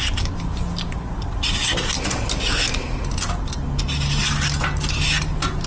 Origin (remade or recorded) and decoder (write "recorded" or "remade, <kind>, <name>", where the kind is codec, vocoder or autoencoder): recorded